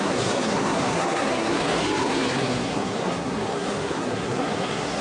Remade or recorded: remade